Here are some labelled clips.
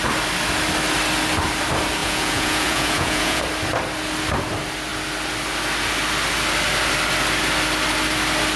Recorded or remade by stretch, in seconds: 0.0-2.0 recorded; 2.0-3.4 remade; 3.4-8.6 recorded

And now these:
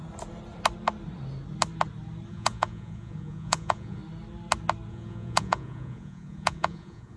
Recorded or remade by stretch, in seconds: 0.0-2.3 recorded; 2.3-4.0 remade; 4.0-4.9 recorded; 4.9-7.2 remade

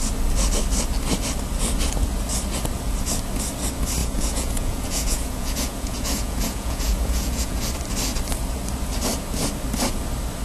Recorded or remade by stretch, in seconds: 0.0-4.0 recorded; 4.0-7.6 remade; 7.6-10.4 recorded